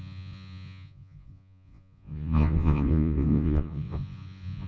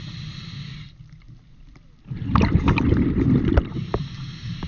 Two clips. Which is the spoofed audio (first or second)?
first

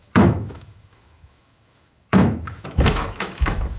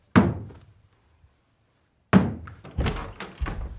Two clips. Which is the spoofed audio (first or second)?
first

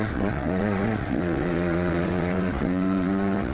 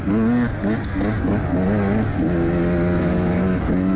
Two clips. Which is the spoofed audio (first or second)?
first